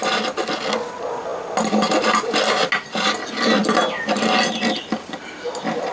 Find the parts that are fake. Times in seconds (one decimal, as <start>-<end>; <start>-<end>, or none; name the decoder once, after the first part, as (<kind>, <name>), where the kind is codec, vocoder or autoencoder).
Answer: none